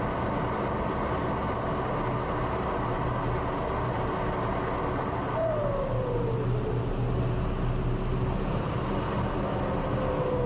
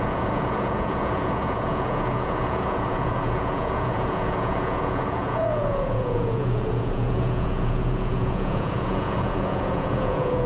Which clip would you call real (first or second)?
first